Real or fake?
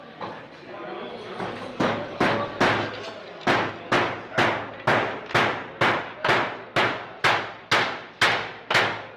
real